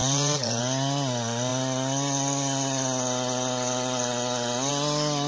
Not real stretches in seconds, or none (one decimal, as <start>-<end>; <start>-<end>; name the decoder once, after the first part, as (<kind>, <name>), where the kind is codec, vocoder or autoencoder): 0.0-0.6 (vocoder, Vocos)